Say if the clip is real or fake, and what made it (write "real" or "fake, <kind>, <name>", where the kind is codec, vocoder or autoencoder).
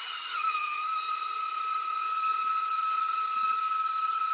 fake, vocoder, HiFi-GAN